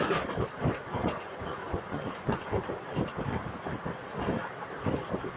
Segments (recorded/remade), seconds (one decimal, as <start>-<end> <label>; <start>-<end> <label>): 0.0-1.0 recorded; 1.0-2.9 remade; 2.9-5.4 recorded